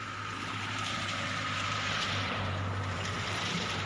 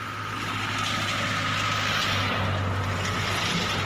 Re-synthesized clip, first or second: first